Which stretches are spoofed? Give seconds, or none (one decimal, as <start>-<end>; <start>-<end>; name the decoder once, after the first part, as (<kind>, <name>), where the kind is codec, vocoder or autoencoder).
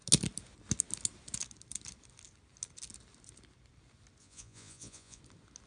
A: 4.2-5.2 (vocoder, Vocos)